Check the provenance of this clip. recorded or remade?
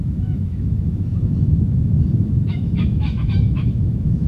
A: remade